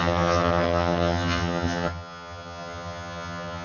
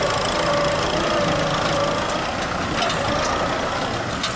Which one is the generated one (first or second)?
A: first